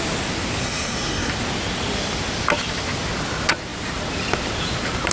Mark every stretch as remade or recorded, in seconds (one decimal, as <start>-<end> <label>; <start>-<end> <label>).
0.0-0.6 recorded; 0.6-1.3 remade; 1.3-5.1 recorded